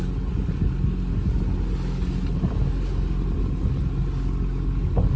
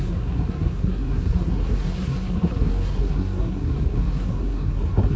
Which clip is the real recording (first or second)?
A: first